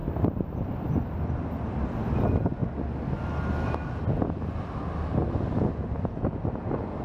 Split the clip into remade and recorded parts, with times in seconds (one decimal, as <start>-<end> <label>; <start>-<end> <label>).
0.0-2.6 remade; 2.6-5.8 recorded; 5.8-7.0 remade